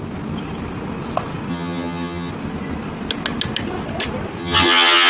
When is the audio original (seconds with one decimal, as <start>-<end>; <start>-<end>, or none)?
0.0-1.5; 2.3-4.4